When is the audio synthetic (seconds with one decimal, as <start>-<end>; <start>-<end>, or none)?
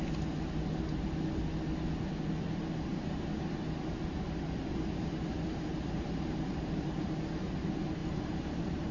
4.7-7.5; 8.0-8.9